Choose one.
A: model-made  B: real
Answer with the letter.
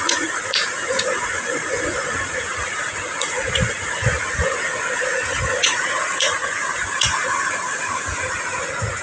A